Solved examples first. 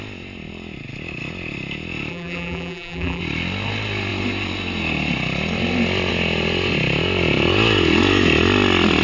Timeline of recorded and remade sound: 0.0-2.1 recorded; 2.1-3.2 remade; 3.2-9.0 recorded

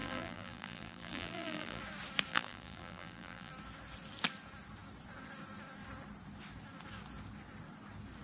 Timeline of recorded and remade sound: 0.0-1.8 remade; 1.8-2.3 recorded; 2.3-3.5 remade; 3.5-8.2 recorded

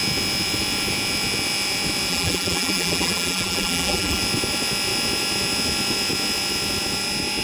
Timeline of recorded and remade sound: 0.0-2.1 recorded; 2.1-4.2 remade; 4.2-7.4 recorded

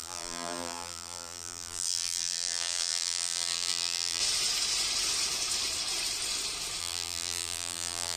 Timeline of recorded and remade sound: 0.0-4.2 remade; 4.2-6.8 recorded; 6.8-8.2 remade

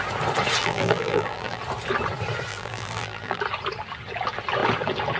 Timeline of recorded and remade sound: 0.0-0.6 recorded; 0.6-1.6 remade; 1.6-2.5 recorded; 2.5-3.4 remade; 3.4-5.2 recorded

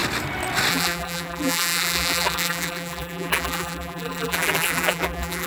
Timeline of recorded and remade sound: 0.0-0.7 recorded; 0.7-5.5 remade

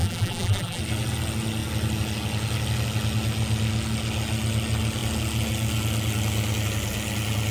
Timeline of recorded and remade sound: 0.0-0.8 remade; 0.8-7.5 recorded